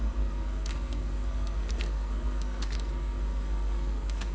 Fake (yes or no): yes